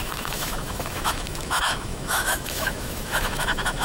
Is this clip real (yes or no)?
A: no